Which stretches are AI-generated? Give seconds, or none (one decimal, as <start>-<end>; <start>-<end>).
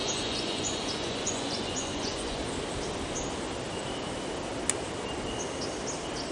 0.0-2.4